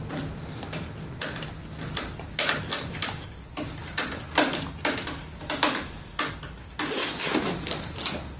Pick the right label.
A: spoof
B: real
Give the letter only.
B